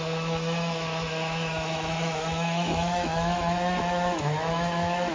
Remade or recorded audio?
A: remade